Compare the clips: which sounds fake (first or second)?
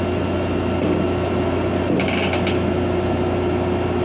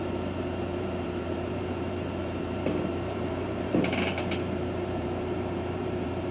second